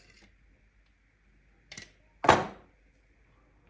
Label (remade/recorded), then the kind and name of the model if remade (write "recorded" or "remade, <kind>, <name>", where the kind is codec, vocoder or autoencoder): recorded